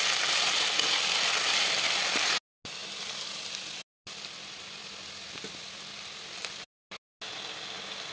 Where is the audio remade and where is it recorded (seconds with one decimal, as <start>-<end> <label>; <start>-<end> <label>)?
0.0-8.1 recorded